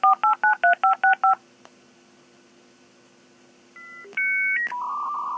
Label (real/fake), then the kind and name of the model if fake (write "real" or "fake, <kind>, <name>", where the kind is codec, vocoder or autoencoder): real